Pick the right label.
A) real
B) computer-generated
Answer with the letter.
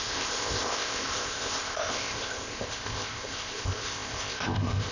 B